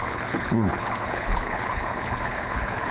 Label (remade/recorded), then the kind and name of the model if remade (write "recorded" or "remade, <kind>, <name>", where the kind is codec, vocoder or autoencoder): remade, codec, HILCodec